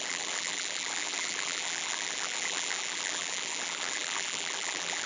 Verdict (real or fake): fake